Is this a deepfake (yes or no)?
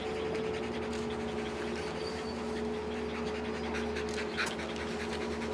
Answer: no